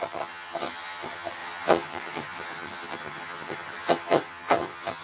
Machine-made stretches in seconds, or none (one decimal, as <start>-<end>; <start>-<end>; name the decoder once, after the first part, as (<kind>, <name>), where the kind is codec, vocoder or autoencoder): 0.0-5.0 (vocoder, HiFi-GAN)